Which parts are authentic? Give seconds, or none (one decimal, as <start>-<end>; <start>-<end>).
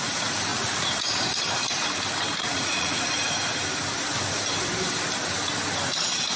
0.0-0.5; 1.1-2.3; 3.1-6.4